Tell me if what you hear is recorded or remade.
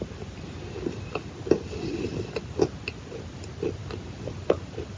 recorded